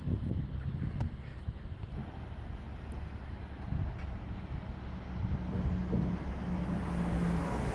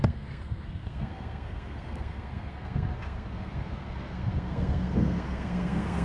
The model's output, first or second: second